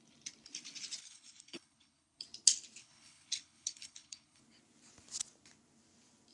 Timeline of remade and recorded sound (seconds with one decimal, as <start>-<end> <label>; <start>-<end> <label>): 0.0-1.0 recorded; 1.0-2.2 remade; 2.2-2.8 recorded; 2.8-4.4 remade; 4.4-6.3 recorded